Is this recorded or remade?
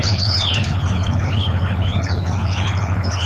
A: remade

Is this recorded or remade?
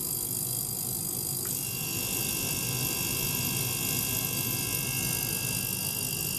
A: recorded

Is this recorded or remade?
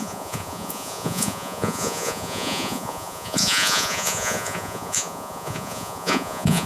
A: remade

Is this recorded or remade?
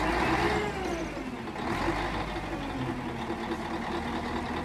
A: recorded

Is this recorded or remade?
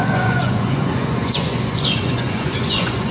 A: remade